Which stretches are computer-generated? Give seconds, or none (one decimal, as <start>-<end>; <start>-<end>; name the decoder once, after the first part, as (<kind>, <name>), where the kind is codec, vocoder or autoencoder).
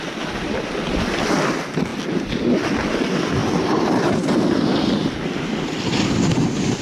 none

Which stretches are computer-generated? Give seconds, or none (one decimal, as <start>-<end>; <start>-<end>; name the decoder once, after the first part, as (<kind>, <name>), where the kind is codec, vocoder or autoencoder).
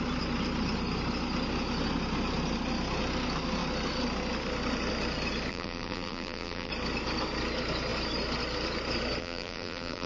5.5-6.7 (vocoder, BigVGAN v2); 9.2-10.1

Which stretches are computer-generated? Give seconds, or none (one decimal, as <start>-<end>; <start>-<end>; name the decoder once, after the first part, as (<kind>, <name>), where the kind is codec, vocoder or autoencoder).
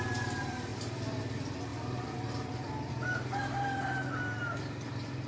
0.7-1.2 (vocoder, BigVGAN v2)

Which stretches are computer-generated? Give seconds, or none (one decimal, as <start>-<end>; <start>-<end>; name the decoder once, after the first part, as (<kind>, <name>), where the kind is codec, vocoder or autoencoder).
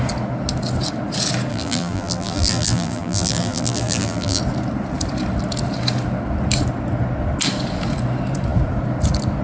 1.5-4.4 (vocoder, BigVGAN v2)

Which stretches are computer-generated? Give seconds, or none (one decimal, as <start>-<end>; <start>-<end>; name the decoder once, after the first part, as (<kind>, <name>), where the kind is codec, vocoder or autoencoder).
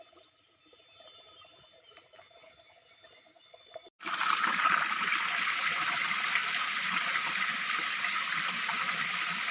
6.4-9.0 (vocoder, BigVGAN v2)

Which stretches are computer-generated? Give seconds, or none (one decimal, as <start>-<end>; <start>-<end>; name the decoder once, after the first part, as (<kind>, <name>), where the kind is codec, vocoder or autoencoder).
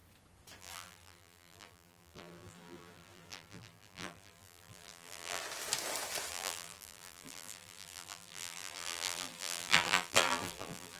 0.6-5.4 (vocoder, BigVGAN v2); 6.3-11.0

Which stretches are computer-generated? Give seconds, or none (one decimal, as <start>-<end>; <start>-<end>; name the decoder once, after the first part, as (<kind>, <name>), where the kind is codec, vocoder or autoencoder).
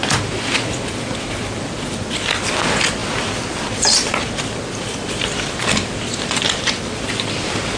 3.0-7.8 (vocoder, BigVGAN v2)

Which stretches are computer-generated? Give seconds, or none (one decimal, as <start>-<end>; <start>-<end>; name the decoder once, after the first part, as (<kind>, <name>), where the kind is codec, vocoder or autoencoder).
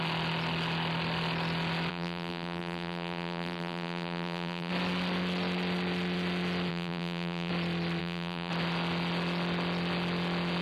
1.9-4.7 (vocoder, BigVGAN v2); 6.7-7.5; 8.0-8.5